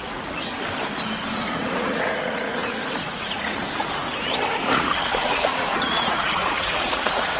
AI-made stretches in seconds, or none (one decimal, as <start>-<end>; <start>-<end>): 0.0-0.5; 1.3-7.4